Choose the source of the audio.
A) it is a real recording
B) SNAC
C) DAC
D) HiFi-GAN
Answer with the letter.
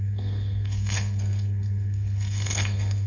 B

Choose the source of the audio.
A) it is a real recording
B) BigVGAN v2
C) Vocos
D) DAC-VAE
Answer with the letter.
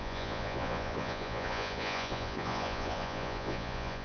C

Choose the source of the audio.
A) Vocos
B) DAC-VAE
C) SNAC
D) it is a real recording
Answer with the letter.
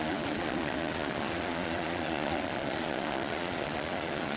A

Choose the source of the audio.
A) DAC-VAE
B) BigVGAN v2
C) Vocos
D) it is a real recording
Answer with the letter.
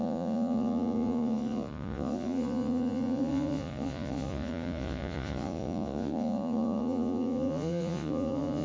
C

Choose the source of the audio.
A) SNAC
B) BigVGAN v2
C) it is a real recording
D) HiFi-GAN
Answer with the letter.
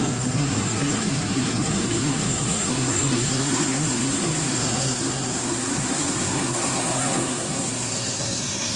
A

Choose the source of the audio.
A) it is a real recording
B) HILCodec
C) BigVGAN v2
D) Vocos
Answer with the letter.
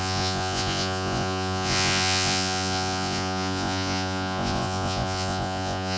D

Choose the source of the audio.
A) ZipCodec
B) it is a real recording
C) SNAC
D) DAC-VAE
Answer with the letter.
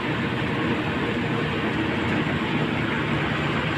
B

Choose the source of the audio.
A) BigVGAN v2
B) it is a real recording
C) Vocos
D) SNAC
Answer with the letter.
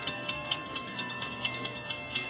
D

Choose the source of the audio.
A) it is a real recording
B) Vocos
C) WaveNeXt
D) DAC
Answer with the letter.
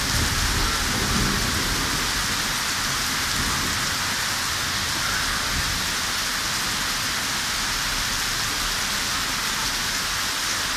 A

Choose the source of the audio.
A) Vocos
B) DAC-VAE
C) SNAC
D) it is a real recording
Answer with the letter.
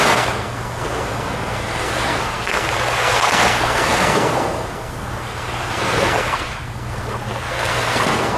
C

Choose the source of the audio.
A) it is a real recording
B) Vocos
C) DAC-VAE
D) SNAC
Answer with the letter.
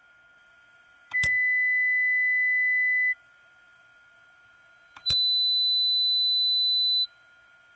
C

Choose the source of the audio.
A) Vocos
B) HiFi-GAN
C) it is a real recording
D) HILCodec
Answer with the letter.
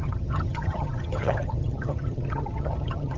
B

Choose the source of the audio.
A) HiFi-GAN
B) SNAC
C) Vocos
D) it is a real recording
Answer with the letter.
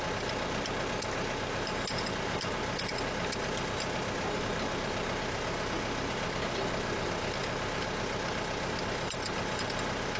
D